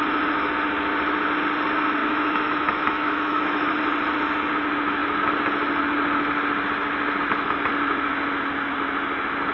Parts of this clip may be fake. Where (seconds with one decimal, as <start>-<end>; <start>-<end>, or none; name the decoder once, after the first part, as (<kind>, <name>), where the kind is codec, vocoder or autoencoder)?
2.0-3.7 (autoencoder, DAC-VAE)